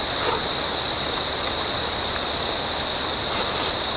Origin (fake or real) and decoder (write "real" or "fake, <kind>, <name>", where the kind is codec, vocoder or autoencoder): real